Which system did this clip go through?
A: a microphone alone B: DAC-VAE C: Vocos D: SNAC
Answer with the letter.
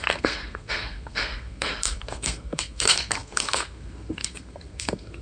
D